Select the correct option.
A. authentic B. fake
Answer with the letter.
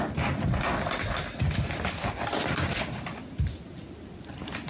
A